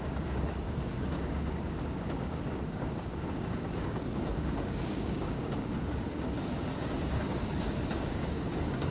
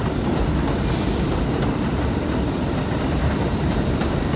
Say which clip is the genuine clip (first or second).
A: second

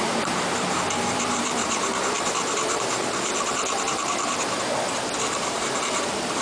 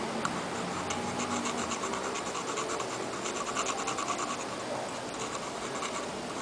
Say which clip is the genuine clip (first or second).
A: second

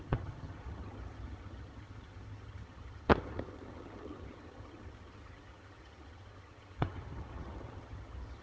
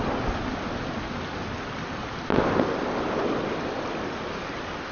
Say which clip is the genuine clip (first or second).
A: second